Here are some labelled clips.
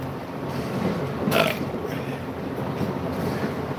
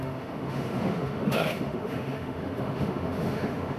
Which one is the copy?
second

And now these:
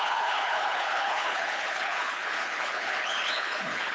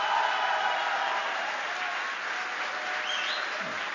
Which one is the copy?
first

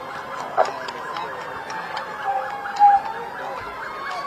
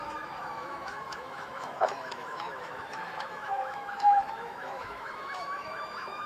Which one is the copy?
second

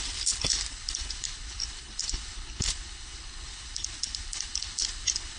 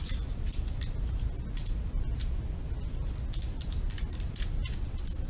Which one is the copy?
first